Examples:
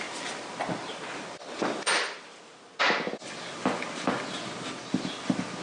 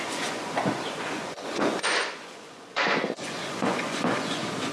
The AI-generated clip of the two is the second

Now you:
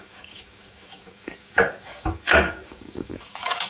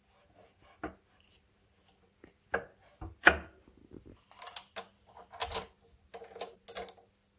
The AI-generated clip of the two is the first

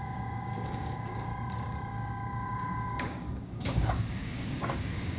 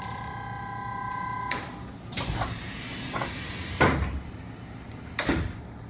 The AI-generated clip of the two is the first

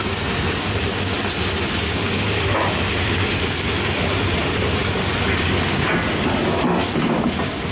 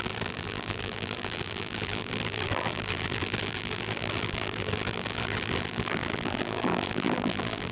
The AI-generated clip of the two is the second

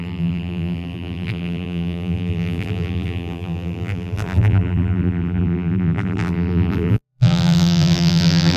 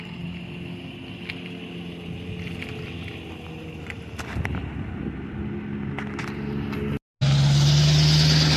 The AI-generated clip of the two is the first